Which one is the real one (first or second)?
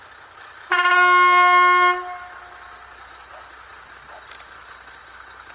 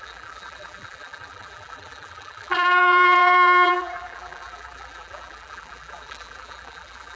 first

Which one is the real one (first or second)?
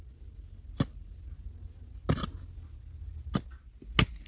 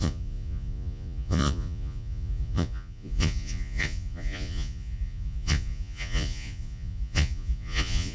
first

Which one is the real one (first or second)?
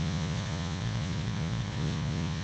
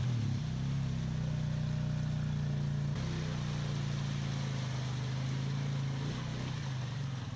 second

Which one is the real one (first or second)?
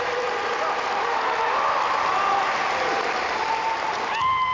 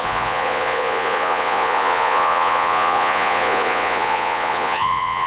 first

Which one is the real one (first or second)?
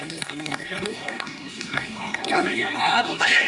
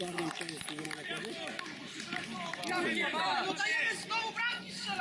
second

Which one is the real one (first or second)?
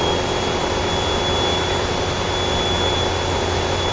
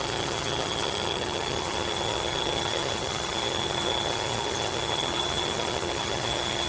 first